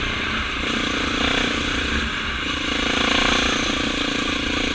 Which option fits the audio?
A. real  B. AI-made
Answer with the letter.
B